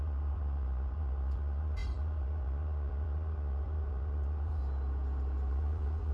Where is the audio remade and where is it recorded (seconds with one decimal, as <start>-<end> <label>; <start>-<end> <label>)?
0.0-4.6 remade; 4.6-5.5 recorded; 5.5-6.1 remade